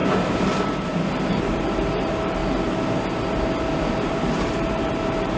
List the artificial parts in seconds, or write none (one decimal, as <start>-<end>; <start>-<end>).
0.0-2.4; 3.9-5.4